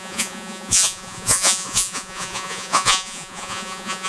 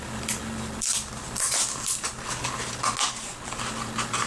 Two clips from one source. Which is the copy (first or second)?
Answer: first